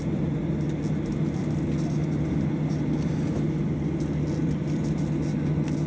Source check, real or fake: real